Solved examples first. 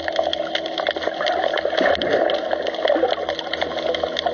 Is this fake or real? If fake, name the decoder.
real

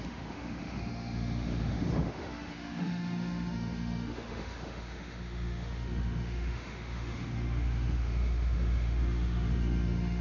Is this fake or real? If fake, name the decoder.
fake, autoencoder, DAC-VAE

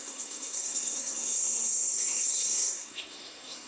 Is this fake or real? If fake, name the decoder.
fake, codec, SNAC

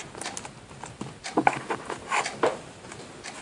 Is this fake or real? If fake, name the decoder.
real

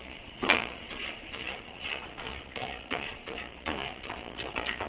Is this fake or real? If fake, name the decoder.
fake, vocoder, Vocos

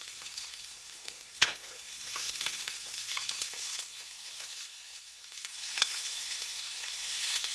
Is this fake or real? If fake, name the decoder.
fake, codec, SNAC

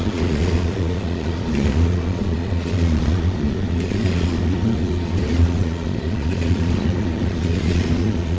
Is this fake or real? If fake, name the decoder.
fake, vocoder, Vocos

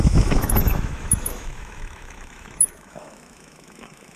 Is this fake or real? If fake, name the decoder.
fake, autoencoder, DAC-VAE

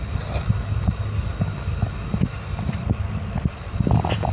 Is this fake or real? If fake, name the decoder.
real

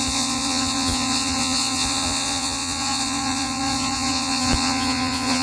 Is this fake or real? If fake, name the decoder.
fake, vocoder, Vocos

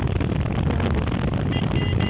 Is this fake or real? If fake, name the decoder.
real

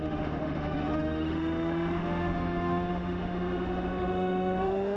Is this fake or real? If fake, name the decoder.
fake, autoencoder, DAC-VAE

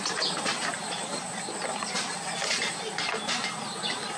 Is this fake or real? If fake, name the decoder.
real